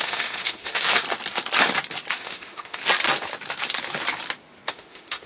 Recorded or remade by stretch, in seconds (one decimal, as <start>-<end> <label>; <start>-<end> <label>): 0.0-1.0 remade; 1.0-2.1 recorded; 2.1-2.8 remade; 2.8-4.7 recorded; 4.7-5.3 remade